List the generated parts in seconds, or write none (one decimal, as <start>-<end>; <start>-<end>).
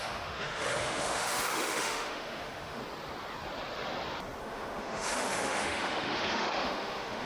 0.0-2.8; 4.4-7.3